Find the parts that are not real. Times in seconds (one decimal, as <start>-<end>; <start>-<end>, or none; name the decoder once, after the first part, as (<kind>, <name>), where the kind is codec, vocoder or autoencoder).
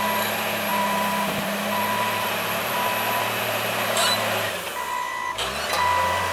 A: 0.7-4.5 (vocoder, BigVGAN v2)